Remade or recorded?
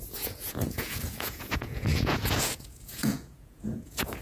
remade